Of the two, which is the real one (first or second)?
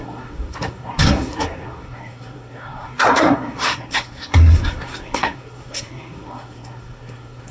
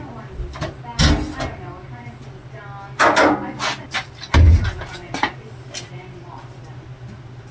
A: second